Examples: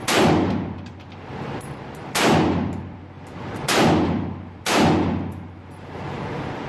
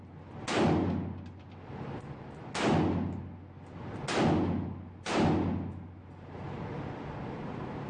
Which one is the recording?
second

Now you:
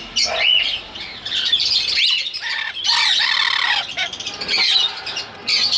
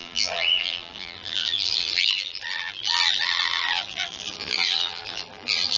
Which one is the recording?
first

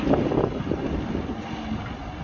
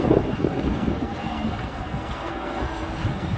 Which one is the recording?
first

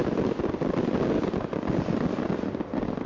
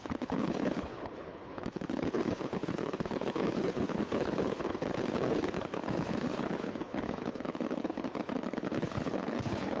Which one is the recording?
first